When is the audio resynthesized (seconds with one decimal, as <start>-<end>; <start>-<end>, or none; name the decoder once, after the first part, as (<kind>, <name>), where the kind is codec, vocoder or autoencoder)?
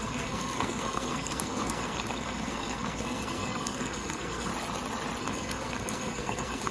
0.0-4.5 (codec, SNAC); 5.2-6.7